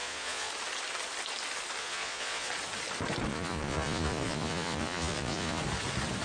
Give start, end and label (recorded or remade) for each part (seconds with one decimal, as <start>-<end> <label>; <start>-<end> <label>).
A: 0.0-0.5 remade; 0.5-1.8 recorded; 1.8-2.5 remade; 2.5-3.3 recorded; 3.3-5.6 remade; 5.6-6.2 recorded